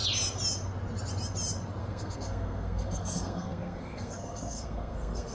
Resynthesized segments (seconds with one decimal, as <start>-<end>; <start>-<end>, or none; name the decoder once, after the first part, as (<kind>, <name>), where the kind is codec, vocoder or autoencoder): 1.8-5.3 (codec, SNAC)